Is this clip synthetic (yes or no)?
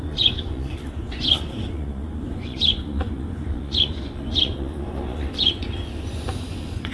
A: yes